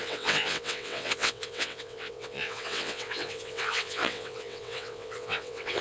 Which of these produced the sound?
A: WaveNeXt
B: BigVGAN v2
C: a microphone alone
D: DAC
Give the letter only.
A